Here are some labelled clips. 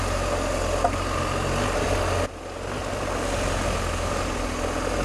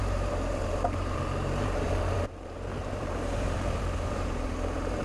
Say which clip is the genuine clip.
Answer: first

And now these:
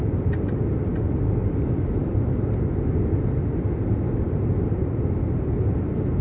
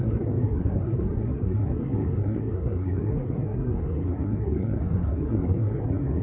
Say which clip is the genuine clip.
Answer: first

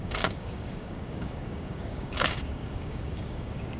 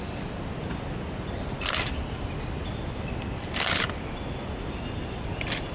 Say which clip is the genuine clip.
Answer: second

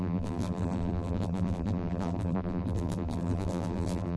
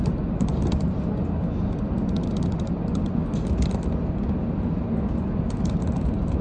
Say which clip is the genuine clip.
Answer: second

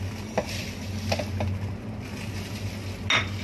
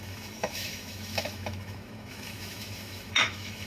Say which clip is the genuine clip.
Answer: first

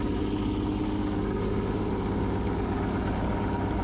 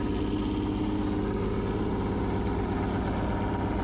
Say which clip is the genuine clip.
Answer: second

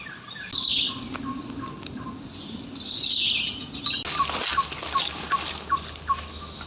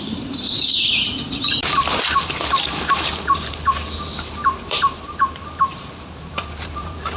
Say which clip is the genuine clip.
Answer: first